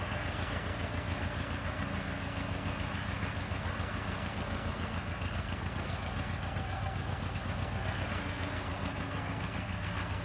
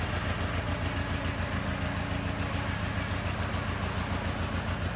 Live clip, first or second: second